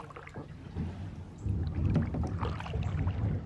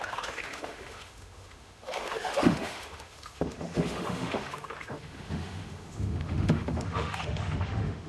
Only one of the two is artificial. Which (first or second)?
second